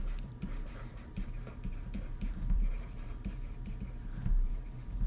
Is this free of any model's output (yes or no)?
no